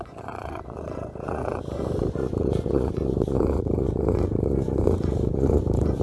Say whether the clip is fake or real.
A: fake